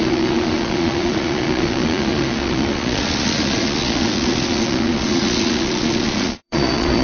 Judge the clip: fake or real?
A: fake